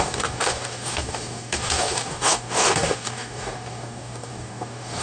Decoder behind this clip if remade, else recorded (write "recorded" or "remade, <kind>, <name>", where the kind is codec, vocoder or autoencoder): remade, codec, DAC